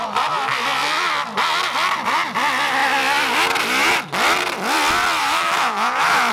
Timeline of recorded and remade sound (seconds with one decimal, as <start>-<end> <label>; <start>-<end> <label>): 0.0-5.2 recorded; 5.2-6.3 remade